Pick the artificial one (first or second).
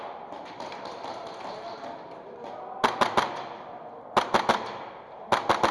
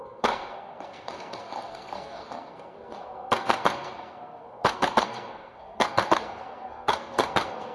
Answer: second